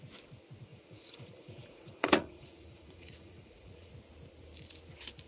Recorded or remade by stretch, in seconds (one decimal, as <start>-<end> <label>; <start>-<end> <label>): 0.0-0.7 recorded; 0.7-3.9 remade; 3.9-5.3 recorded